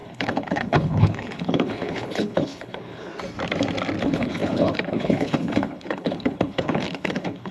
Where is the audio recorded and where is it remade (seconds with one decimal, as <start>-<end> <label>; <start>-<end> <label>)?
0.0-3.1 remade; 3.1-4.0 recorded; 4.0-7.5 remade